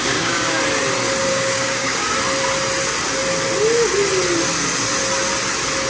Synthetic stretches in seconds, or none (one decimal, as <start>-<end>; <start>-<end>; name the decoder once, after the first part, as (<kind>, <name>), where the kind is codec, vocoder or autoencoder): 0.0-0.6 (codec, DAC); 1.3-2.1